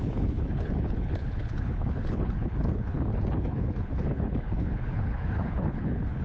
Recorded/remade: remade